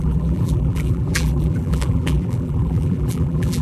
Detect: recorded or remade remade